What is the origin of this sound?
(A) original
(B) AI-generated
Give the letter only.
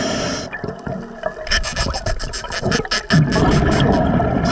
A